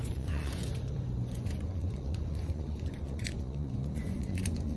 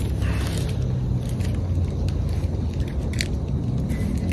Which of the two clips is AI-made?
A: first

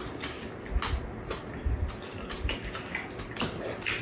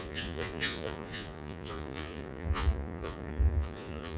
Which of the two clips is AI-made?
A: second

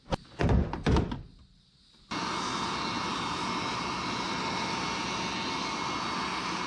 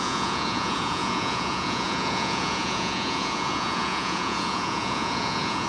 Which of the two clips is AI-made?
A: second